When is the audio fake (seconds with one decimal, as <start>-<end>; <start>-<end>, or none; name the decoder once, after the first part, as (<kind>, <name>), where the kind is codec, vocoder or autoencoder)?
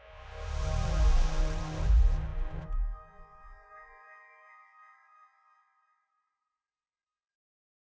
none